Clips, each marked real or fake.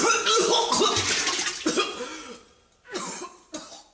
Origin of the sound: real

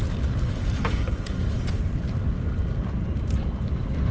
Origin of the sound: fake